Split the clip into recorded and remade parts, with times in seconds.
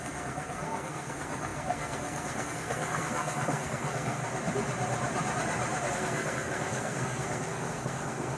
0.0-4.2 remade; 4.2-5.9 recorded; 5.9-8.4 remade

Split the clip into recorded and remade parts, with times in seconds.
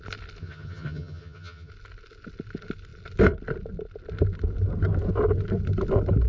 0.0-0.4 recorded; 0.4-1.7 remade; 1.7-6.3 recorded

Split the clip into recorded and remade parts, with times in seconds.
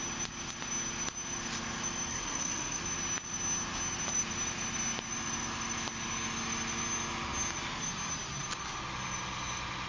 0.0-2.1 recorded; 2.1-2.8 remade; 2.8-9.9 recorded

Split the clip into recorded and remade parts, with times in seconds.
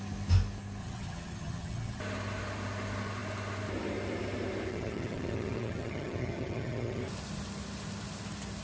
0.0-0.8 recorded; 0.8-2.0 remade; 2.0-4.7 recorded; 4.7-7.0 remade; 7.0-8.6 recorded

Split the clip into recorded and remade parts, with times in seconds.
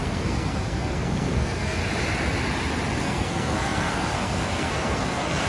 0.0-1.8 remade; 1.8-3.0 recorded; 3.0-5.5 remade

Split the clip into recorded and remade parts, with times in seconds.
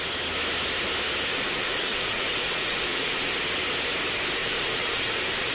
0.0-1.3 recorded; 1.3-3.3 remade; 3.3-4.4 recorded; 4.4-5.5 remade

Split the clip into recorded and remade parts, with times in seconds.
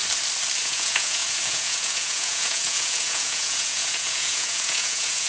0.0-0.6 recorded; 0.6-5.3 remade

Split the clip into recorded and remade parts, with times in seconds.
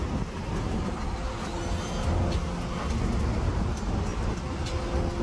0.0-1.0 remade; 1.0-3.5 recorded; 3.5-4.1 remade; 4.1-5.2 recorded